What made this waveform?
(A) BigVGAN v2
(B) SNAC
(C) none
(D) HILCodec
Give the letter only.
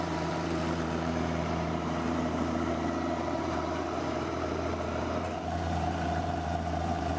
A